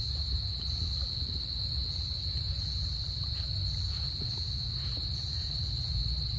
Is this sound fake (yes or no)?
no